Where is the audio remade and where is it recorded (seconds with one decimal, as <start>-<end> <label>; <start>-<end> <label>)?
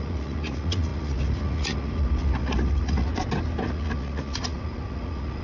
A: 0.0-3.1 remade; 3.1-3.6 recorded; 3.6-5.4 remade